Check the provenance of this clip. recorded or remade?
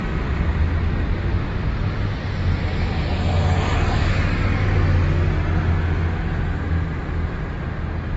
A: recorded